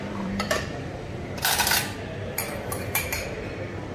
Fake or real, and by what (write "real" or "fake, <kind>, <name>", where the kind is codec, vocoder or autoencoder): fake, vocoder, BigVGAN v2